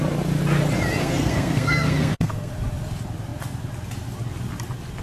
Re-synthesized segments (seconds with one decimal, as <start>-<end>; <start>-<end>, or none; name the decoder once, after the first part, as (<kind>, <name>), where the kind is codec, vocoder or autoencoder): 1.0-2.5 (codec, SNAC)